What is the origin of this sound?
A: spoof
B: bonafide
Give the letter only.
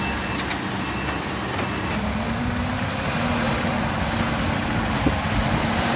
B